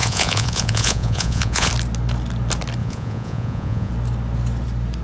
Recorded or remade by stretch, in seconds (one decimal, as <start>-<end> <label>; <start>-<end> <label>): 0.0-1.7 remade; 1.7-2.8 recorded; 2.8-3.9 remade; 3.9-5.0 recorded